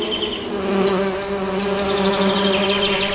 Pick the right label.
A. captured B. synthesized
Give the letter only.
A